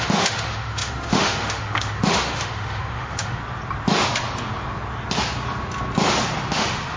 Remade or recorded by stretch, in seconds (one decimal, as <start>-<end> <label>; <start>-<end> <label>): 0.0-3.4 remade; 3.4-6.5 recorded; 6.5-7.0 remade